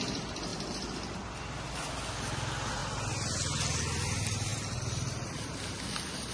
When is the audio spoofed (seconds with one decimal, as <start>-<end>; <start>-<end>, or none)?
4.5-5.5